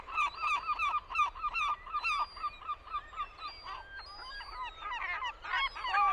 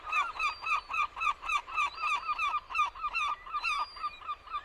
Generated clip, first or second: second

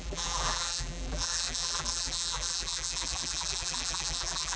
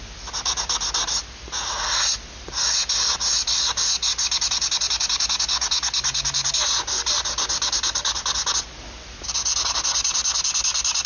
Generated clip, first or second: first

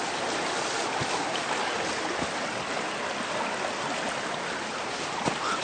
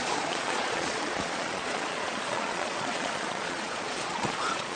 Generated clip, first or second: second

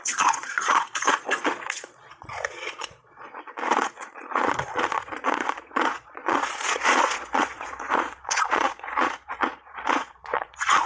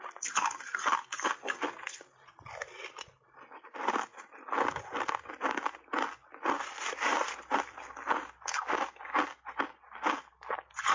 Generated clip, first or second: first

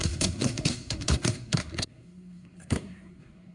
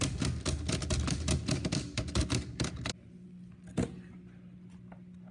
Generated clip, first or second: first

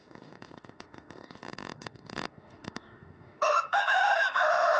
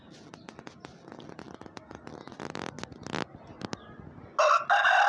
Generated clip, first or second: first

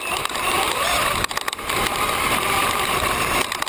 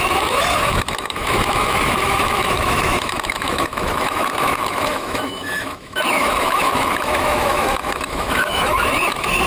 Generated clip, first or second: second